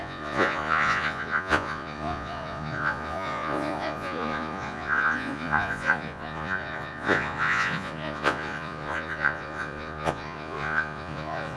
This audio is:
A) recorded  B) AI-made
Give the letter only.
B